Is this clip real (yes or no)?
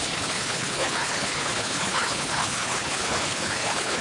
no